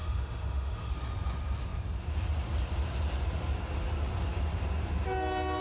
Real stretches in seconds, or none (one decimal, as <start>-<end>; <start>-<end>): 0.9-5.6